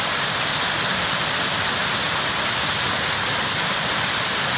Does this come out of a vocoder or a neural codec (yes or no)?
no